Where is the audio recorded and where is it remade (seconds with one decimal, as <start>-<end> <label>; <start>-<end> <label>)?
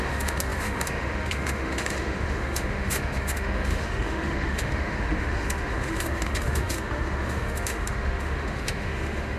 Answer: 0.0-9.4 remade